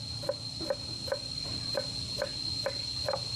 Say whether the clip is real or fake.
real